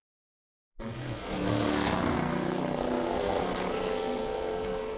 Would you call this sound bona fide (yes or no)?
no